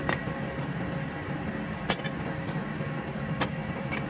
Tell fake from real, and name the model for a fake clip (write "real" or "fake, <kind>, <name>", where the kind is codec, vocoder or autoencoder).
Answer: real